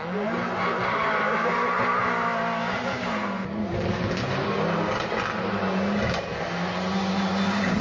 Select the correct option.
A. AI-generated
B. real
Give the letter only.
B